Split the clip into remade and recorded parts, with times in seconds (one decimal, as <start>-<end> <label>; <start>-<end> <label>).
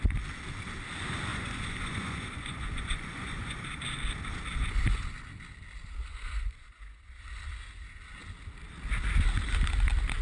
0.0-1.3 recorded; 1.3-3.6 remade; 3.6-4.5 recorded; 4.5-5.0 remade; 5.0-6.1 recorded; 6.1-7.2 remade; 7.2-10.2 recorded